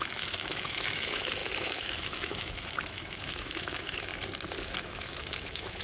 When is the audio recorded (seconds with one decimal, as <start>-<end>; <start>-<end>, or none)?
4.1-4.6